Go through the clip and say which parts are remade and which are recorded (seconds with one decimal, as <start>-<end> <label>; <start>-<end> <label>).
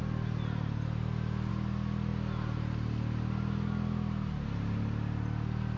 0.0-5.8 recorded